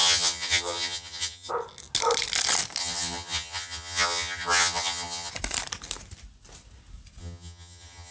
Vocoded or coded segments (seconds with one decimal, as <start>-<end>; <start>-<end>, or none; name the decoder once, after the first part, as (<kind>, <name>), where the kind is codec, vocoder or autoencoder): 0.0-1.5 (vocoder, HiFi-GAN); 2.8-5.3; 7.2-8.1